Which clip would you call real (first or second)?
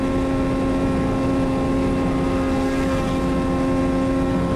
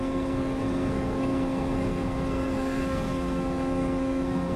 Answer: first